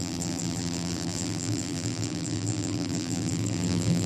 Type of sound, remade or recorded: remade